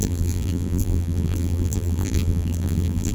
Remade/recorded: remade